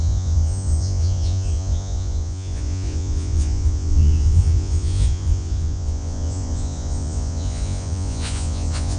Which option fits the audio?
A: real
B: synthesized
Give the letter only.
B